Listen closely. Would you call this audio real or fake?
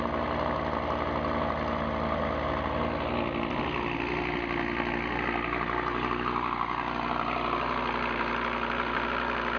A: real